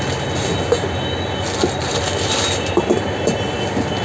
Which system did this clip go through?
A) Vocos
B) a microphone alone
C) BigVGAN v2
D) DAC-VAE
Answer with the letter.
B